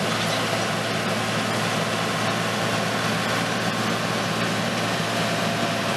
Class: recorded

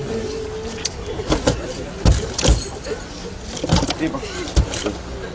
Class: recorded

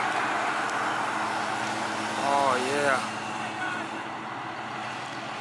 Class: recorded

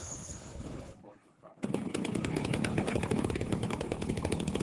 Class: remade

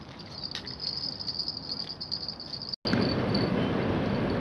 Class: recorded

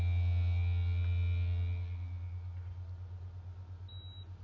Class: recorded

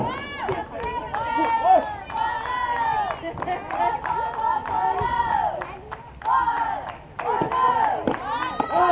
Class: recorded